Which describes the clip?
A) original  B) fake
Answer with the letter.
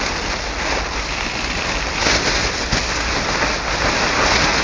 A